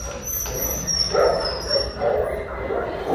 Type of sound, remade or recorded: remade